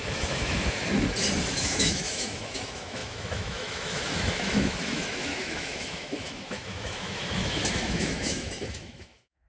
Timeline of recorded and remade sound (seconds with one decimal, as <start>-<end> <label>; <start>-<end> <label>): 0.0-0.8 remade; 0.8-1.5 recorded; 1.5-9.5 remade